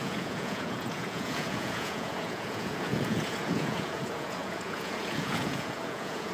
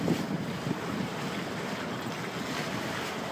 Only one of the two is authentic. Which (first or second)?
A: second